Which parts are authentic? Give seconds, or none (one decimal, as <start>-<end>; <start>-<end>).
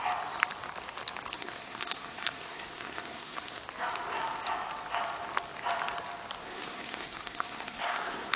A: 0.0-1.3; 3.6-6.4